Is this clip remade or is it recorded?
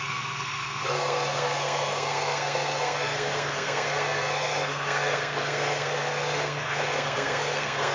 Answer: remade